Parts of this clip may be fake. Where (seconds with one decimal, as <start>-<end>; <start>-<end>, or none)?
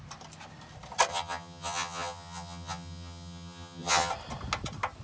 1.1-4.1